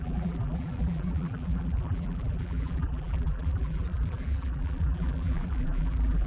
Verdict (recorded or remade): remade